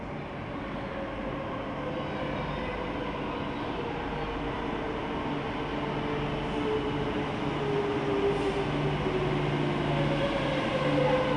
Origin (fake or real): real